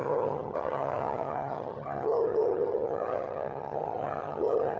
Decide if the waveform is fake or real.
fake